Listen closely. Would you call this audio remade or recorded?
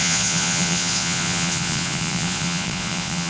remade